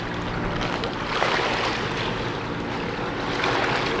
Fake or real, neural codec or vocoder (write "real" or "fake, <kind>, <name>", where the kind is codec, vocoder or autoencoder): real